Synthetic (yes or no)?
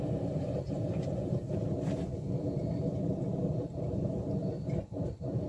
yes